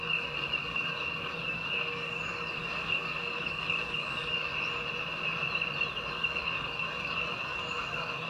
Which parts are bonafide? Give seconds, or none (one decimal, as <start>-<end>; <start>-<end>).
4.5-6.1